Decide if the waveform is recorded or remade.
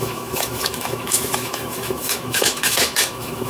remade